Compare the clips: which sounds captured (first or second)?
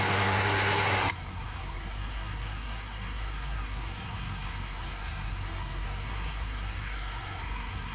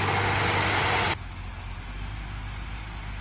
second